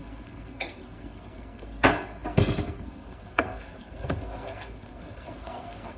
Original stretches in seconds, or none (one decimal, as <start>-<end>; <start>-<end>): none